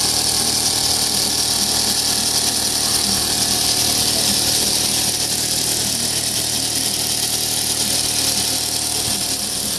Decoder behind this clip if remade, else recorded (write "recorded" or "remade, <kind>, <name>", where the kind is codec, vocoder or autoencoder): recorded